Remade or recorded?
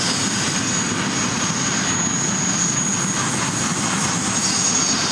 recorded